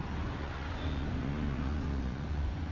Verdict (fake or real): fake